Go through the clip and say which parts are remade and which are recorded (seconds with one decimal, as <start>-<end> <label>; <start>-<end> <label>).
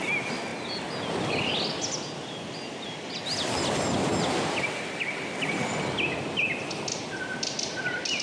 0.0-8.2 recorded